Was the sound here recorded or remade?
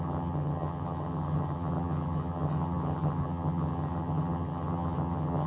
remade